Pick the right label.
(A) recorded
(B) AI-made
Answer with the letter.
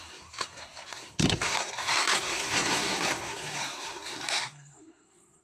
B